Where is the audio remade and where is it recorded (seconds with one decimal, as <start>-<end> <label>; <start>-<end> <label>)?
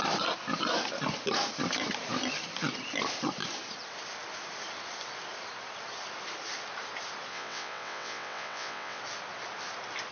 0.0-7.3 recorded; 7.3-9.0 remade; 9.0-10.1 recorded